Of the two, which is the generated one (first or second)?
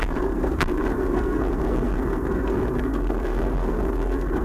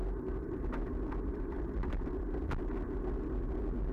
first